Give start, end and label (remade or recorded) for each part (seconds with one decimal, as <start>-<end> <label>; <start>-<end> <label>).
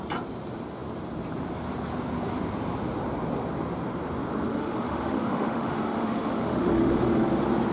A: 0.0-4.5 recorded; 4.5-7.3 remade; 7.3-7.7 recorded